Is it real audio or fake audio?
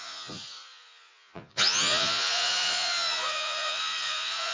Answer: fake